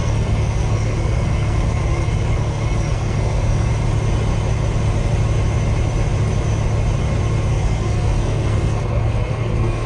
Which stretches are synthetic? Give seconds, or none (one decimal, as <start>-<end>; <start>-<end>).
0.0-3.7; 7.5-9.9